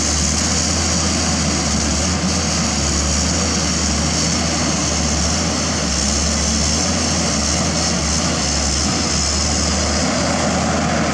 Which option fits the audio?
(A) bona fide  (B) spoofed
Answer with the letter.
A